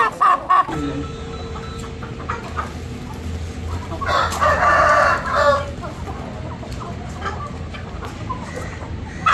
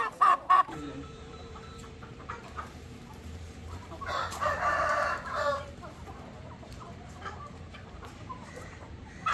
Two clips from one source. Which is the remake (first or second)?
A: second